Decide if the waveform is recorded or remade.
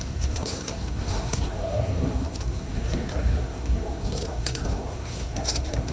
remade